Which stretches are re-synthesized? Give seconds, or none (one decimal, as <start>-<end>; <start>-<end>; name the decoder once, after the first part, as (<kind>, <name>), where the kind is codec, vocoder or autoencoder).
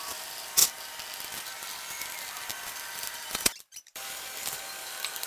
0.0-0.6 (vocoder, BigVGAN v2); 2.0-5.3